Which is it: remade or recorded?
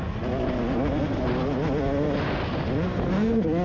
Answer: recorded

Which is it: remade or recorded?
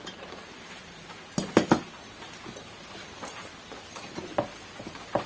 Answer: recorded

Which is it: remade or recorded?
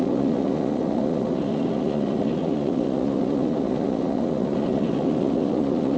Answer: remade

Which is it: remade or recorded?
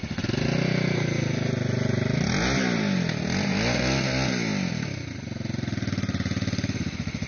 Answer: recorded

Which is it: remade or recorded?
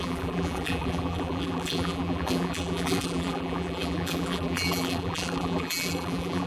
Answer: remade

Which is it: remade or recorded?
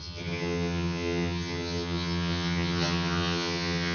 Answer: remade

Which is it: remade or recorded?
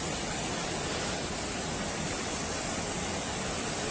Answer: recorded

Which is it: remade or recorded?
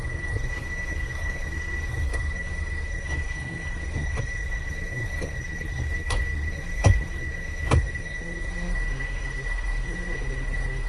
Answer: remade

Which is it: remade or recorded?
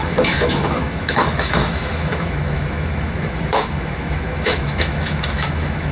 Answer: remade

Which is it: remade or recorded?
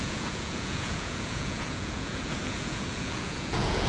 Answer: remade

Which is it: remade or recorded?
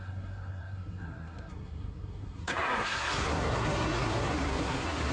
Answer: remade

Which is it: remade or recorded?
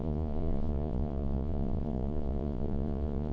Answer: remade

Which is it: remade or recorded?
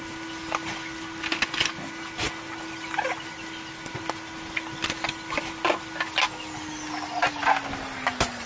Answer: recorded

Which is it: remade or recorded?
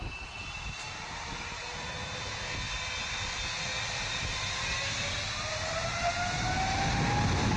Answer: recorded